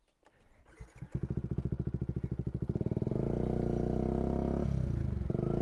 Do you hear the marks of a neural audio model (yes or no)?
no